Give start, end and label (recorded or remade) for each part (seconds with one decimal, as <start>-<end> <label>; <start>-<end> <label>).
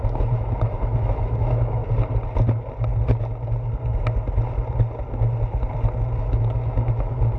0.0-1.8 remade; 1.8-6.2 recorded; 6.2-7.4 remade